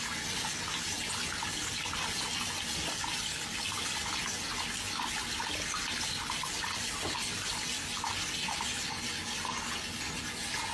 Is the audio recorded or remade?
recorded